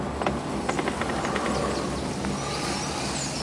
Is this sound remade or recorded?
recorded